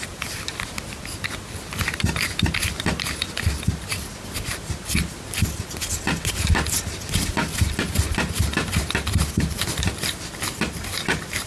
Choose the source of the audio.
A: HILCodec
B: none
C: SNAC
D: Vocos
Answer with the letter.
B